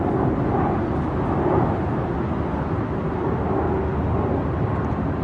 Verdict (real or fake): real